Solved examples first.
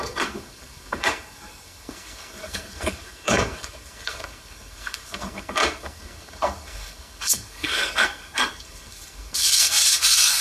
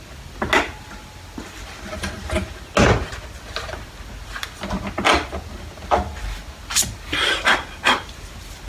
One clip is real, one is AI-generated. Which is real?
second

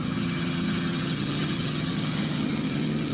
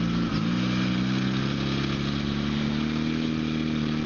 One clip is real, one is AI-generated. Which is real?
second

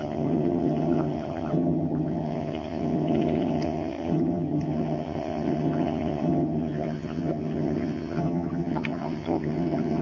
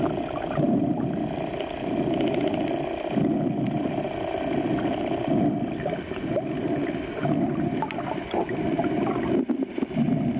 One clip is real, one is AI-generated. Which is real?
second